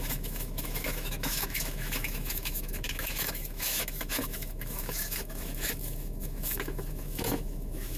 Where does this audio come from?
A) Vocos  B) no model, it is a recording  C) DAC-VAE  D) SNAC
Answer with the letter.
C